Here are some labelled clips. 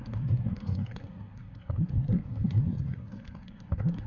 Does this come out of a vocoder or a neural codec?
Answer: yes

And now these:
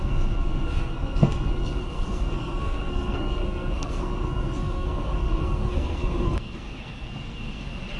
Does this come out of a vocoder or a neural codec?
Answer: yes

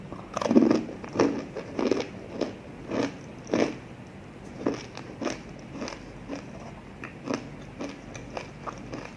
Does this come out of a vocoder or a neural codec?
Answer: no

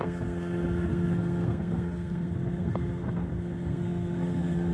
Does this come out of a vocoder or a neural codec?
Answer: yes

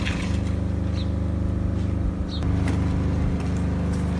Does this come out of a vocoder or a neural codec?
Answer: no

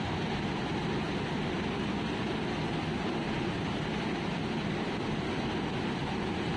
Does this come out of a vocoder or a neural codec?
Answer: no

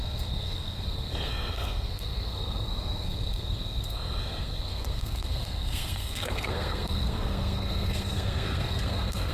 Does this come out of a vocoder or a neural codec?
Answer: yes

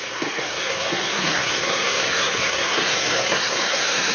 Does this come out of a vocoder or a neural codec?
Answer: yes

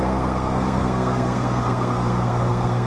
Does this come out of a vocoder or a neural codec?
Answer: yes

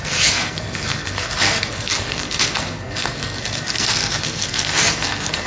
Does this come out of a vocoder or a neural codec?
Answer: yes